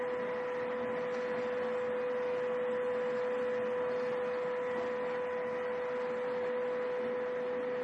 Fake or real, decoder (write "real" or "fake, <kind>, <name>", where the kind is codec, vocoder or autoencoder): real